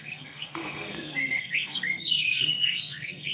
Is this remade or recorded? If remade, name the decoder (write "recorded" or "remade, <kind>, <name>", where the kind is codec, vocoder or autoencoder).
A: remade, codec, SNAC